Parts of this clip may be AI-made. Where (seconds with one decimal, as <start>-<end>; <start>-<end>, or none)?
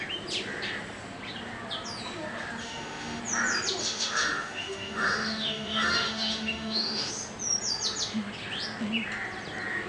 2.6-3.2; 3.8-7.1